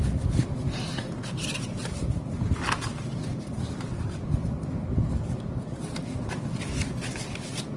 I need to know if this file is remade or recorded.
recorded